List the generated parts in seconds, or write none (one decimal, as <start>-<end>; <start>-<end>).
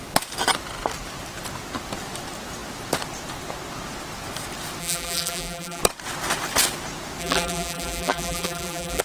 4.8-5.8; 7.2-9.0